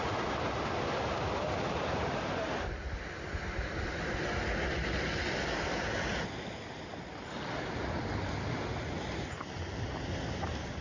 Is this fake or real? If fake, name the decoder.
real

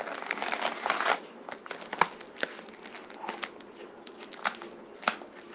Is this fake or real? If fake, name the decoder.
real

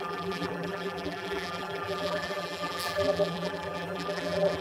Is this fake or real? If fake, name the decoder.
fake, vocoder, BigVGAN v2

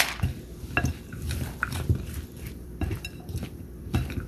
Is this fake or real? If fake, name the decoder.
fake, vocoder, BigVGAN v2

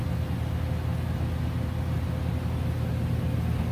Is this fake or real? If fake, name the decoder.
real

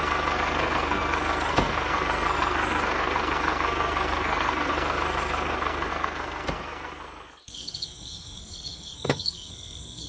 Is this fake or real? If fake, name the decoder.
fake, codec, SNAC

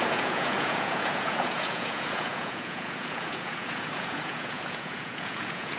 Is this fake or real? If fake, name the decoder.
fake, vocoder, Vocos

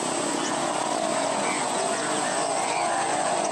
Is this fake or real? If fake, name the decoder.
fake, vocoder, Vocos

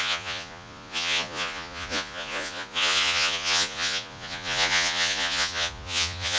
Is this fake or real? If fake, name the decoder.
fake, vocoder, Vocos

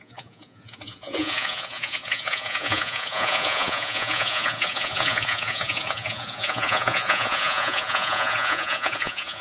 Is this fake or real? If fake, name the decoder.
fake, vocoder, Vocos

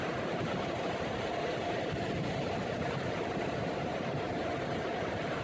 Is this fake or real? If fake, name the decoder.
fake, vocoder, BigVGAN v2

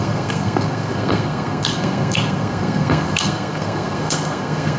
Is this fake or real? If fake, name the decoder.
fake, codec, SNAC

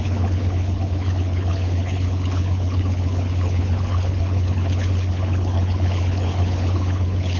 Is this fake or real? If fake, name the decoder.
fake, codec, HILCodec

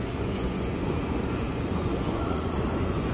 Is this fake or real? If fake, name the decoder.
fake, vocoder, Vocos